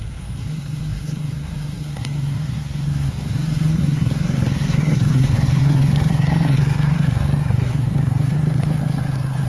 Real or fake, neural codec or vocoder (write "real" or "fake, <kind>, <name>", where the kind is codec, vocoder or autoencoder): fake, codec, SNAC